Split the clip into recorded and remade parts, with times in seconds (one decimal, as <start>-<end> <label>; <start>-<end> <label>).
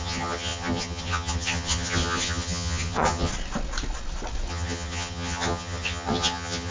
0.0-3.3 remade; 3.3-4.5 recorded; 4.5-6.7 remade